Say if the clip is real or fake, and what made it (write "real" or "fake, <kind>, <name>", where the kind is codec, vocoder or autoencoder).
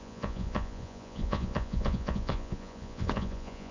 fake, vocoder, Vocos